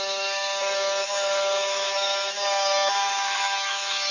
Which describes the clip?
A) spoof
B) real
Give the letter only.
A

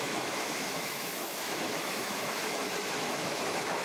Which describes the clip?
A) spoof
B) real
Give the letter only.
A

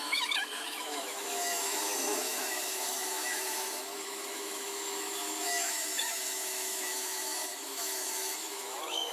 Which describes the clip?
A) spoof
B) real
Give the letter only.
A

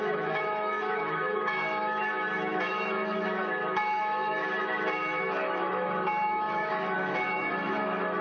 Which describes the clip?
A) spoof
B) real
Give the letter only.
A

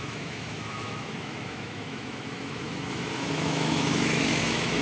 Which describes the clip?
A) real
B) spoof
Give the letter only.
B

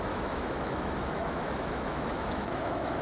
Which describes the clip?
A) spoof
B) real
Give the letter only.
A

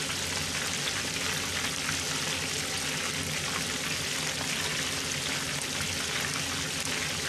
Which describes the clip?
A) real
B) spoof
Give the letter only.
A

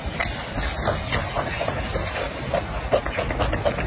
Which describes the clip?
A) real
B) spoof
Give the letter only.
A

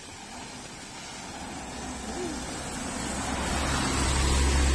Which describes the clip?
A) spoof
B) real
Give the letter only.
B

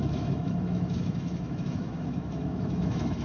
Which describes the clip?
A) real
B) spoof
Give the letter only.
B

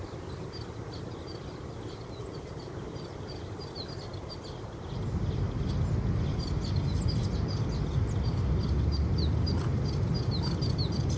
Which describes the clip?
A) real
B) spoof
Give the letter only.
A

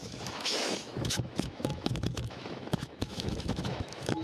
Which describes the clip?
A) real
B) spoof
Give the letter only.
B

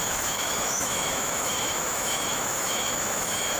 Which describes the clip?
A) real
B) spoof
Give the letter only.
B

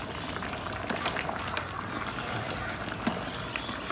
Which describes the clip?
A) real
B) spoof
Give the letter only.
A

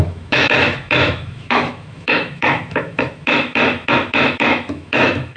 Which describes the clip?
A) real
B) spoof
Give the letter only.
B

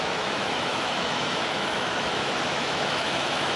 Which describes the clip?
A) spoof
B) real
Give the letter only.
A